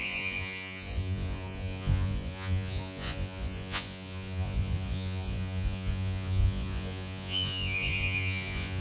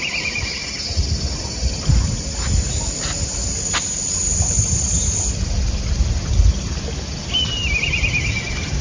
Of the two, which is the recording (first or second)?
second